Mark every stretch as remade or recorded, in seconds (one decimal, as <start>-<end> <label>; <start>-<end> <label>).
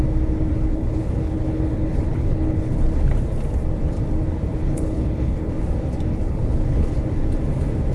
0.0-0.5 recorded; 0.5-3.1 remade; 3.1-4.5 recorded; 4.5-5.5 remade; 5.5-6.1 recorded; 6.1-6.9 remade; 6.9-7.9 recorded